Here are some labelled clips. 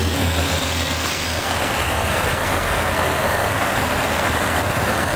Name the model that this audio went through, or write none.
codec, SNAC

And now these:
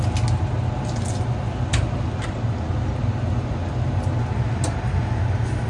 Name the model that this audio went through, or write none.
none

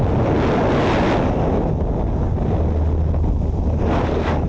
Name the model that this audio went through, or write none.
none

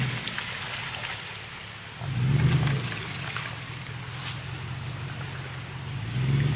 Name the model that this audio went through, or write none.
none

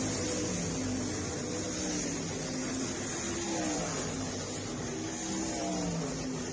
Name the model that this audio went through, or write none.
none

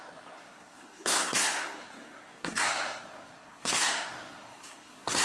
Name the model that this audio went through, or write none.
codec, SNAC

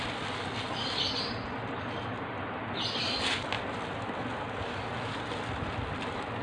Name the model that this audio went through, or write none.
none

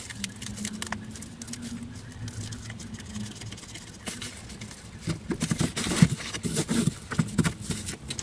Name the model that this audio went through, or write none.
none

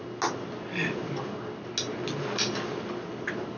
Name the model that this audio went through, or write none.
none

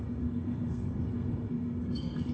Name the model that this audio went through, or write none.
codec, SNAC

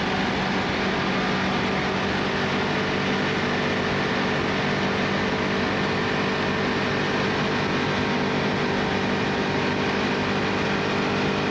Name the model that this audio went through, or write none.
none